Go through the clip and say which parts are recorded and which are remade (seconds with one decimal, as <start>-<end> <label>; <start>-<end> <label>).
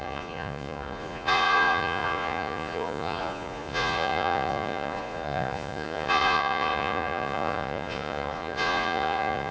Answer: 0.0-9.5 remade